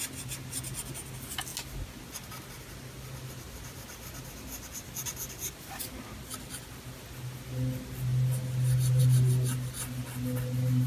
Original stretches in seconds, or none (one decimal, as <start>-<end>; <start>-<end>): 0.0-10.9